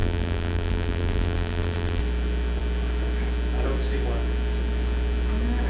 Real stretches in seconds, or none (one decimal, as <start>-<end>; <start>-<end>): 2.0-5.7